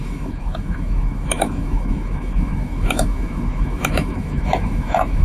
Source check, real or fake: fake